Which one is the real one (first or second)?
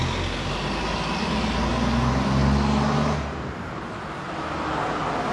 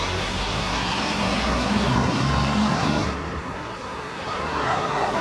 first